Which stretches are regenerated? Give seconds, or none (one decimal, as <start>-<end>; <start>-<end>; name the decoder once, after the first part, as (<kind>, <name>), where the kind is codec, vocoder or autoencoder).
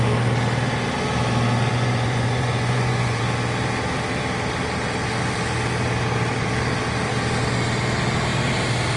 1.7-3.2 (vocoder, Vocos)